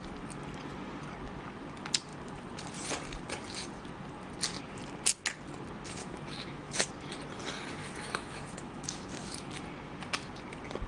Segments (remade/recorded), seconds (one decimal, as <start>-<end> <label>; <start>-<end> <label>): 0.0-6.0 recorded; 6.0-6.9 remade; 6.9-7.8 recorded; 7.8-9.5 remade; 9.5-10.9 recorded